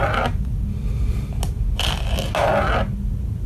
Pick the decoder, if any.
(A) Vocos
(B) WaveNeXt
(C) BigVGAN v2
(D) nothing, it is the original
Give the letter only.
D